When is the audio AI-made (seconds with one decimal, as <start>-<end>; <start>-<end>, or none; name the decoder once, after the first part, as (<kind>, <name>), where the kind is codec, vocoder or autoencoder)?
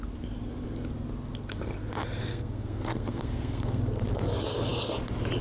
2.2-3.8 (codec, SNAC)